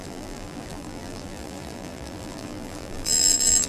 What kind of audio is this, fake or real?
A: fake